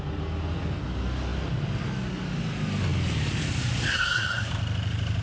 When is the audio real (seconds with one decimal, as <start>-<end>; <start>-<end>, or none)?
0.0-3.9; 4.5-5.2